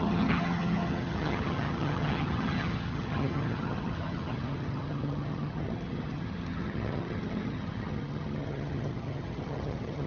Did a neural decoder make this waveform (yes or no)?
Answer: yes